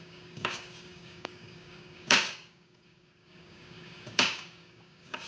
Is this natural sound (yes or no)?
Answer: no